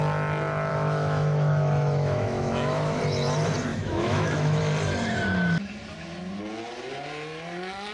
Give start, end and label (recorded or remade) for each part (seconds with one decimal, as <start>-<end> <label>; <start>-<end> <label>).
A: 0.0-0.7 recorded; 0.7-3.0 remade; 3.0-3.7 recorded; 3.7-4.6 remade; 4.6-7.9 recorded